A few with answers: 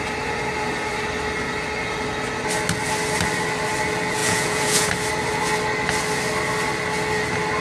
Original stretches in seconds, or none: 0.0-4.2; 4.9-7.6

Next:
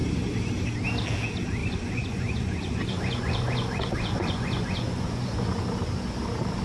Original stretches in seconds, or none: 0.0-1.6; 5.6-6.6

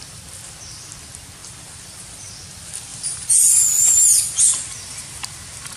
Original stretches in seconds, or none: 0.0-1.4; 2.3-2.9; 4.4-5.8

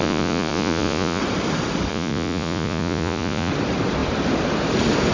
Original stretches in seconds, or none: 1.2-1.9; 3.5-5.1

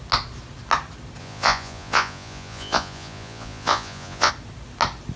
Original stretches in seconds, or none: 0.0-1.2; 4.3-5.2

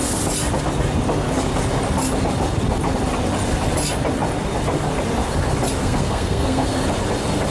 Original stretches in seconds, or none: 0.0-5.8; 6.8-7.5